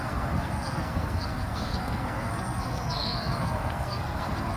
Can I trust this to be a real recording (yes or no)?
no